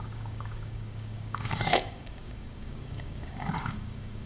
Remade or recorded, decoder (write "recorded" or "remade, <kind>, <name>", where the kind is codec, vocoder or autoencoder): remade, codec, DAC